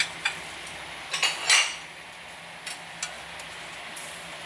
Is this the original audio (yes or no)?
yes